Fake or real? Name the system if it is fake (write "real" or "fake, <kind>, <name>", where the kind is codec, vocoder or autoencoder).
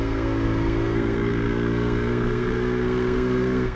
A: fake, codec, SNAC